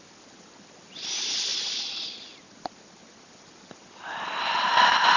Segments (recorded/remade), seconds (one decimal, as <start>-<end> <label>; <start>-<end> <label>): 0.0-5.2 recorded